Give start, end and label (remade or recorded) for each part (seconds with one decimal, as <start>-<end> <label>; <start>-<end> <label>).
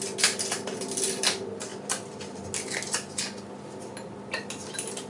0.0-5.1 recorded